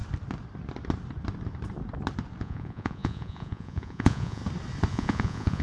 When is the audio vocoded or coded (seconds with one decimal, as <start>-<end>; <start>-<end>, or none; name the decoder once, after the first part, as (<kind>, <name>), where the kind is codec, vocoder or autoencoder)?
2.4-4.4 (vocoder, Vocos); 4.9-5.6